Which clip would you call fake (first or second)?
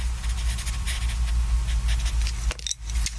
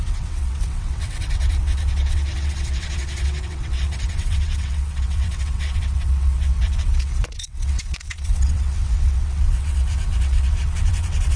second